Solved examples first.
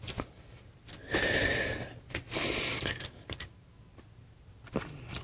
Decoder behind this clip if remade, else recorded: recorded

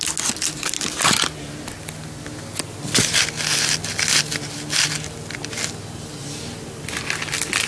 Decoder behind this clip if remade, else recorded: recorded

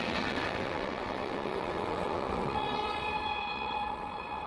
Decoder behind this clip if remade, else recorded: remade, vocoder, WaveNeXt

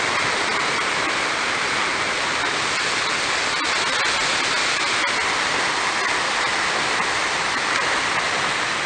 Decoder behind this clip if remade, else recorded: recorded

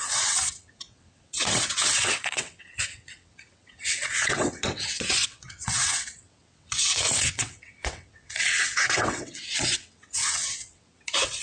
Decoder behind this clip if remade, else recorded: remade, vocoder, WaveNeXt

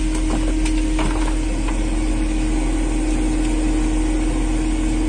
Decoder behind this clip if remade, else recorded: recorded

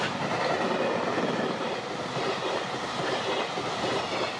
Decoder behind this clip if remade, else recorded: recorded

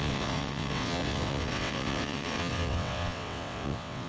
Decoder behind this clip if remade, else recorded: remade, vocoder, WaveNeXt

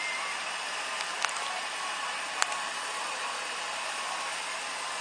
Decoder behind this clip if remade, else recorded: recorded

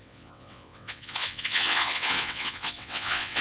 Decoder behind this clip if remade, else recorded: remade, vocoder, WaveNeXt